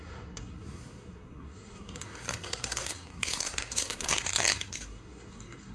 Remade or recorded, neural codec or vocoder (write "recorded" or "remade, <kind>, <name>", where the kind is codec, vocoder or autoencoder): remade, codec, SNAC